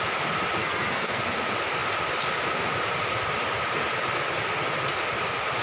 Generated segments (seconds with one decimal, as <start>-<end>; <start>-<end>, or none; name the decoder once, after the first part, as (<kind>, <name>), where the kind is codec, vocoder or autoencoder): 0.6-1.2 (codec, SNAC)